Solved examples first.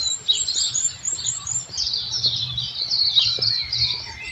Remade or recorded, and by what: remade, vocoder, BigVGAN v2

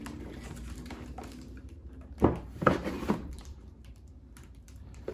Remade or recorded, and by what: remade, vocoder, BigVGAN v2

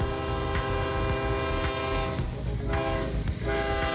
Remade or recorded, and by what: recorded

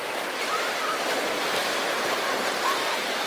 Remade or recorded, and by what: remade, vocoder, BigVGAN v2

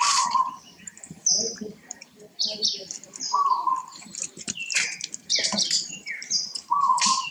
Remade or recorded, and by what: remade, vocoder, BigVGAN v2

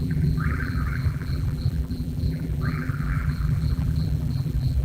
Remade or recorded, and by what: remade, vocoder, BigVGAN v2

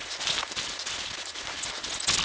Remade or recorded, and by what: recorded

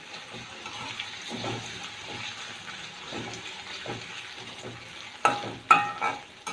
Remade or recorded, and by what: recorded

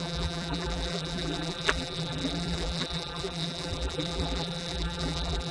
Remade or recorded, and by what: remade, vocoder, BigVGAN v2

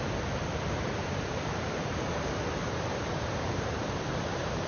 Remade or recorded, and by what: remade, vocoder, BigVGAN v2